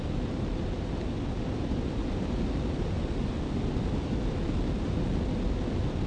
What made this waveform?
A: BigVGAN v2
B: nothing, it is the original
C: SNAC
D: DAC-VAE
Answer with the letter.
B